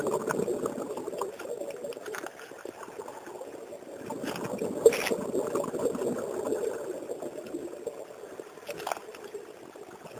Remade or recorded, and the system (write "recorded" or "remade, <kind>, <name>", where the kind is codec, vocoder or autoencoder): recorded